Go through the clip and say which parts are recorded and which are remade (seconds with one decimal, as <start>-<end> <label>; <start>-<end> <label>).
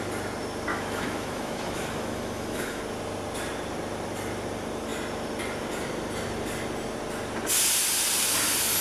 0.0-0.7 recorded; 0.7-2.8 remade; 2.8-8.8 recorded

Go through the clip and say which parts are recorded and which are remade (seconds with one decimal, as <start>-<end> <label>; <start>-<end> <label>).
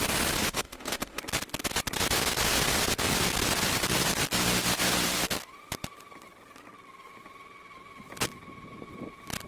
0.0-0.4 recorded; 0.4-1.2 remade; 1.2-9.5 recorded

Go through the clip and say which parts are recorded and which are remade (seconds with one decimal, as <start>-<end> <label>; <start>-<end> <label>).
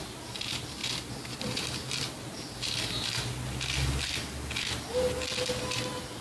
0.0-6.2 recorded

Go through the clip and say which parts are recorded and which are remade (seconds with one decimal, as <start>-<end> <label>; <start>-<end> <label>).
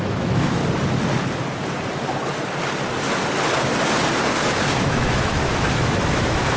0.0-0.6 remade; 0.6-4.6 recorded; 4.6-6.6 remade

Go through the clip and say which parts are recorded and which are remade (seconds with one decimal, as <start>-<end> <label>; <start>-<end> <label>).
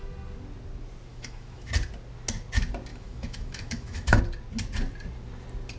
0.0-1.1 recorded; 1.1-1.7 remade; 1.7-2.9 recorded; 2.9-4.2 remade; 4.2-5.8 recorded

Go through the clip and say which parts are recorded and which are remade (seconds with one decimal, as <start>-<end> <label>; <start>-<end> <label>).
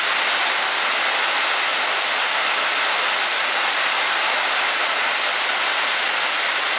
0.0-6.8 recorded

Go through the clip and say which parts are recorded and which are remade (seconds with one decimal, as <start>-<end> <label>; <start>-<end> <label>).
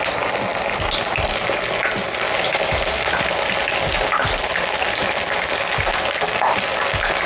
0.0-7.3 recorded